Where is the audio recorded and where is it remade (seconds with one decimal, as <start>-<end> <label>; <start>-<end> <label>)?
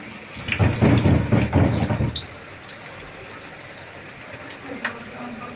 0.0-5.6 recorded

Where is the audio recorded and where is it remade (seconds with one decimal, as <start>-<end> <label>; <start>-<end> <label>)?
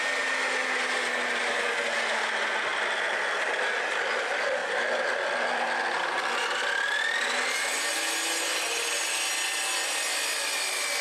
0.0-11.0 recorded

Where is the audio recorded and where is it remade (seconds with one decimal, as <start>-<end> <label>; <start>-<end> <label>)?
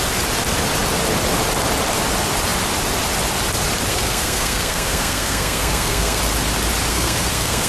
0.0-3.9 recorded; 3.9-6.2 remade; 6.2-6.9 recorded; 6.9-7.7 remade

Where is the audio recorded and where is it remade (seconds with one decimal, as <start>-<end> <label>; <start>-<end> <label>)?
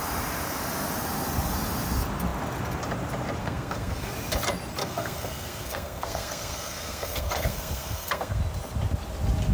0.0-3.4 recorded; 3.4-4.1 remade; 4.1-4.8 recorded; 4.8-8.4 remade; 8.4-9.5 recorded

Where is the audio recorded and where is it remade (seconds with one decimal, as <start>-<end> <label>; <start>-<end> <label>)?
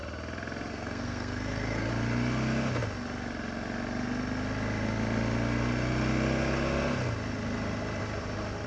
0.0-0.7 recorded; 0.7-1.9 remade; 1.9-8.7 recorded